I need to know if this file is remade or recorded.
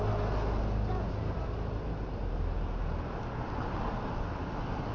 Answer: recorded